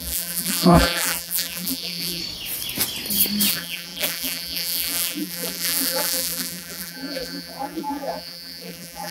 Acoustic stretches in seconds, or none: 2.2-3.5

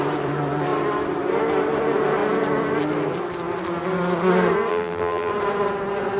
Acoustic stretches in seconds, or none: 0.0-4.7; 5.3-6.2